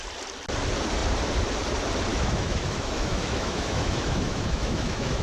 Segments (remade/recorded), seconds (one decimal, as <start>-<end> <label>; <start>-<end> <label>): 0.0-2.1 recorded; 2.1-5.2 remade